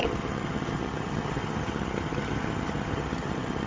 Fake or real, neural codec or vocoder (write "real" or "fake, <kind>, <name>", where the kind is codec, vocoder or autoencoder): fake, vocoder, HiFi-GAN